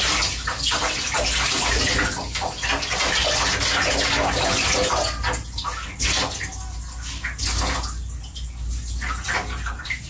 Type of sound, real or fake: real